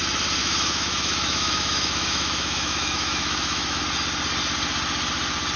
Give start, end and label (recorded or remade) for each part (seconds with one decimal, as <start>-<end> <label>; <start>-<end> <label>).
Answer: 0.0-0.4 recorded; 0.4-3.8 remade; 3.8-5.6 recorded